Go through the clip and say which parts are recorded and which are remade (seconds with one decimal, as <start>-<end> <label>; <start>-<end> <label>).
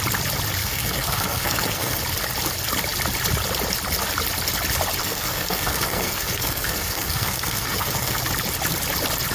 0.0-0.6 recorded; 0.6-2.0 remade; 2.0-5.0 recorded; 5.0-8.2 remade; 8.2-9.3 recorded